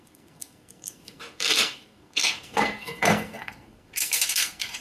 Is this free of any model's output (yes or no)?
no